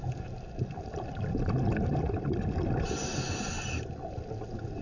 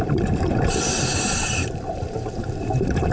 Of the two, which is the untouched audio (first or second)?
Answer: first